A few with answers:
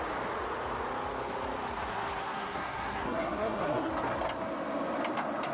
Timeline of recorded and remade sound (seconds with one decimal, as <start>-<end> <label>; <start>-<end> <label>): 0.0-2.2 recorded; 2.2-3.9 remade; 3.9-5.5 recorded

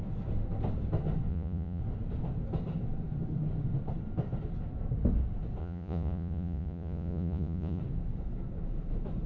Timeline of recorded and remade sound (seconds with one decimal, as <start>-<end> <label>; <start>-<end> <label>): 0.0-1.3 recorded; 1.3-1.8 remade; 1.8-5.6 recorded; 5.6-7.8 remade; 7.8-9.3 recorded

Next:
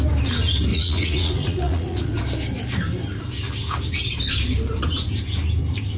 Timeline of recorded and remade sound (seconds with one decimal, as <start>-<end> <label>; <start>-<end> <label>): 0.0-0.7 recorded; 0.7-2.2 remade; 2.2-6.0 recorded

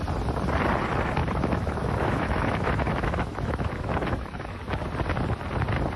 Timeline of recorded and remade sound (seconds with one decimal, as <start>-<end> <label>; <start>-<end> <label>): 0.0-1.2 recorded; 1.2-4.8 remade; 4.8-6.0 recorded

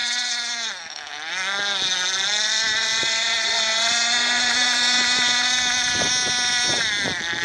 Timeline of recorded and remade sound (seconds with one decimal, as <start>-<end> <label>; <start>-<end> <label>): 0.0-0.7 remade; 0.7-2.9 recorded; 2.9-6.1 remade; 6.1-7.4 recorded